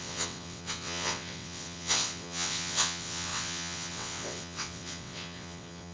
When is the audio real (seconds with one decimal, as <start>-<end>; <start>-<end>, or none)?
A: none